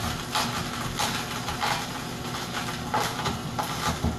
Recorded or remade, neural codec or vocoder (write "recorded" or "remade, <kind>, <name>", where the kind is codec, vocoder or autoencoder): recorded